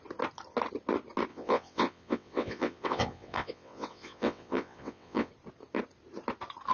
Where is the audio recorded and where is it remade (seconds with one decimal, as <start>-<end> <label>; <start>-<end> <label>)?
0.0-1.3 recorded; 1.3-5.3 remade; 5.3-6.7 recorded